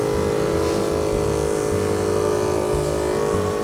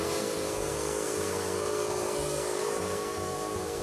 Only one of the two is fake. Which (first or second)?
second